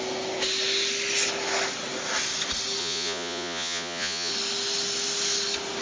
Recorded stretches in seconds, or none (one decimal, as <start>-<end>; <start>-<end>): 0.0-2.8; 4.3-5.8